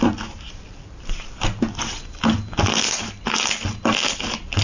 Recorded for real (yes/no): yes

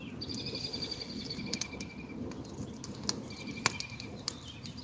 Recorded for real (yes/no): yes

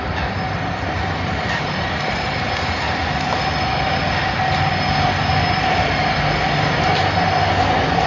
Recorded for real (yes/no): yes